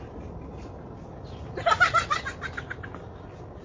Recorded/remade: recorded